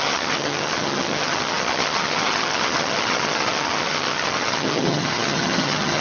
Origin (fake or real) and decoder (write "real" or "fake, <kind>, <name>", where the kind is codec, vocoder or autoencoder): fake, vocoder, HiFi-GAN